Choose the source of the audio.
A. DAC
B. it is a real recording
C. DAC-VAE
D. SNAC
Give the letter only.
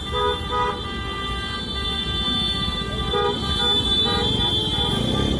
B